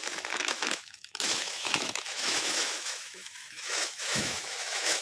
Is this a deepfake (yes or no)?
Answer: yes